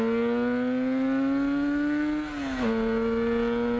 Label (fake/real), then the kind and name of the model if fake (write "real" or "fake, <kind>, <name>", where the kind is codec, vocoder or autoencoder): real